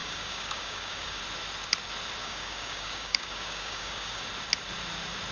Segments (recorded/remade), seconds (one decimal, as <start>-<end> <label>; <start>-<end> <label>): 0.0-1.2 remade; 1.2-2.2 recorded; 2.2-4.2 remade; 4.2-5.3 recorded